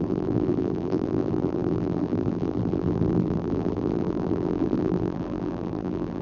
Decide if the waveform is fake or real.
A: fake